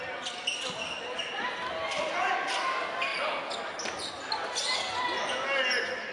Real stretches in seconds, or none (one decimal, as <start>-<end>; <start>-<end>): 0.0-6.1